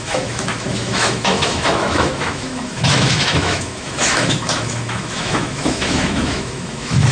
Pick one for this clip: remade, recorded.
remade